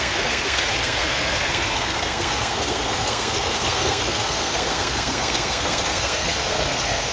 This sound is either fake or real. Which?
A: fake